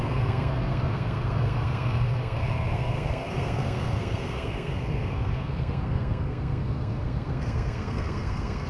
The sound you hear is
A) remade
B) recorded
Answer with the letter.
A